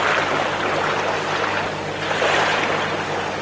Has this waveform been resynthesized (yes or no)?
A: no